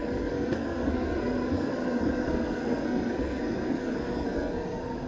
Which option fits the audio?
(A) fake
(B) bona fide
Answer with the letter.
A